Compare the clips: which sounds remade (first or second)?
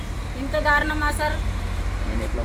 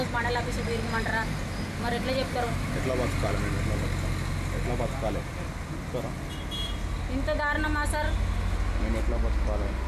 first